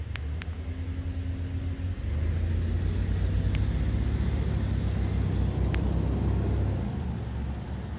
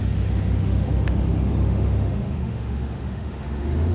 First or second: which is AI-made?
second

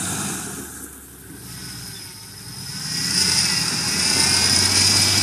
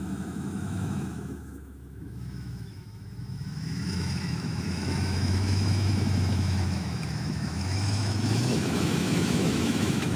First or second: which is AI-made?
second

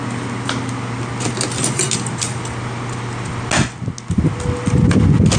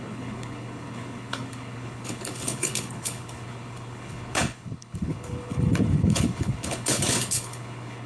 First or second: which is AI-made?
second